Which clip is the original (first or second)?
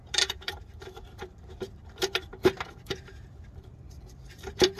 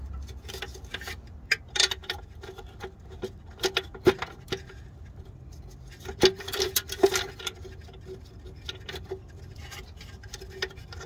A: second